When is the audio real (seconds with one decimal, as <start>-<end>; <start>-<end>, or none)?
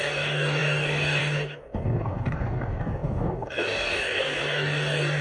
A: none